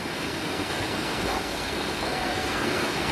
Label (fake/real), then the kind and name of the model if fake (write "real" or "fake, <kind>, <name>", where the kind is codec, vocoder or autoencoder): fake, codec, SNAC